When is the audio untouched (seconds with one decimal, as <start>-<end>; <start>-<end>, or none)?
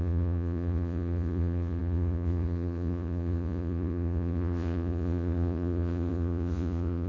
none